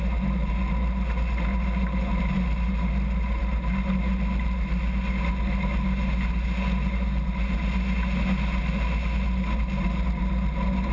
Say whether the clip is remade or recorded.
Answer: recorded